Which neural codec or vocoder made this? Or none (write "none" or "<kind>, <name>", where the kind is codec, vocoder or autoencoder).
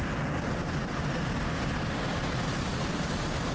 none